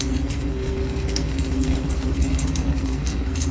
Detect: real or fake fake